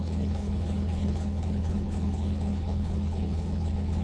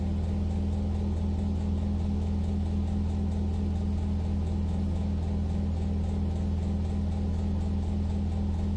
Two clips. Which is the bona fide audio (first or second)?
second